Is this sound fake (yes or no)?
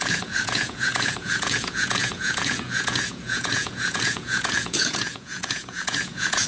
yes